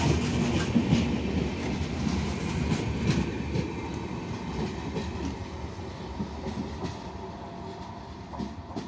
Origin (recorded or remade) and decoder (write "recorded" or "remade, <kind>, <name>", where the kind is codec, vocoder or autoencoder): recorded